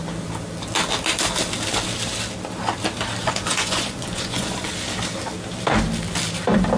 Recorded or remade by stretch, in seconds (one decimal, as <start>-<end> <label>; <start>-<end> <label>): 0.0-3.2 recorded; 3.2-4.7 remade; 4.7-6.8 recorded